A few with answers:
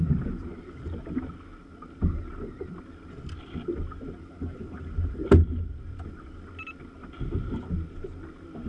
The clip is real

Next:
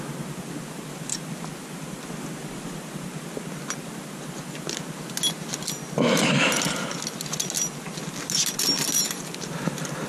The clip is real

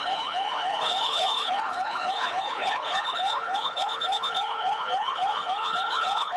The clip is fake